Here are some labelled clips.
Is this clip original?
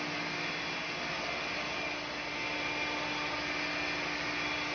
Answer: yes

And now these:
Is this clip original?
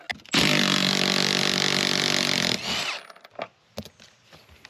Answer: yes